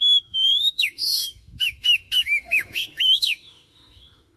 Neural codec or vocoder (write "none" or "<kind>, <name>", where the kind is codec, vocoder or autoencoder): autoencoder, DAC-VAE